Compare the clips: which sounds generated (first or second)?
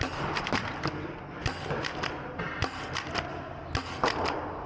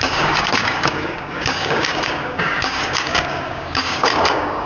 second